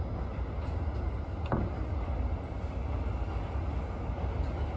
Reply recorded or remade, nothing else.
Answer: recorded